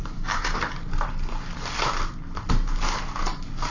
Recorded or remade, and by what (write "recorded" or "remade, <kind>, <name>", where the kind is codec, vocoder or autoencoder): recorded